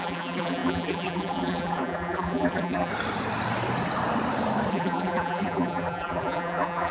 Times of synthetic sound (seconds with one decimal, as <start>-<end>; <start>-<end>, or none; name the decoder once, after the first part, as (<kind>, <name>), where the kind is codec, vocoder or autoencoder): 0.0-2.9 (vocoder, BigVGAN v2); 4.7-6.9